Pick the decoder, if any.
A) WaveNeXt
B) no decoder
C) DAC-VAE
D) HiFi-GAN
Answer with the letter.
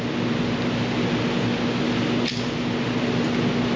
B